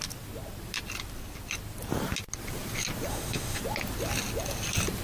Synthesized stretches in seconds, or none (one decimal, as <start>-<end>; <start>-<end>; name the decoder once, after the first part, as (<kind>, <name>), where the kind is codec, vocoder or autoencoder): 3.1-3.6 (autoencoder, DAC-VAE)